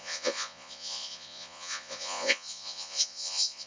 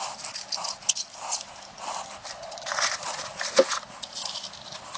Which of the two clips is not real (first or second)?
first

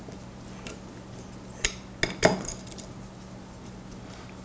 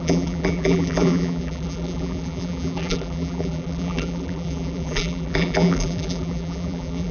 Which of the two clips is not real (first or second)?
second